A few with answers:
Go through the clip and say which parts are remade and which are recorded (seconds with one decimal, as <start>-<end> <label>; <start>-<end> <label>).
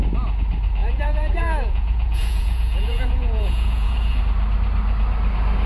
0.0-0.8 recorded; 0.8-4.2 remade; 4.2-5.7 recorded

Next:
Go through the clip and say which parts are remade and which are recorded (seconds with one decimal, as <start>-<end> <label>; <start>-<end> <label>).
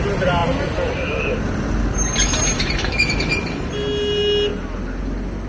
0.0-5.5 recorded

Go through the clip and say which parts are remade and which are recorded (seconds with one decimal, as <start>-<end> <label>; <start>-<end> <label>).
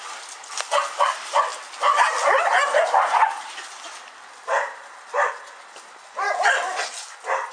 0.0-7.5 recorded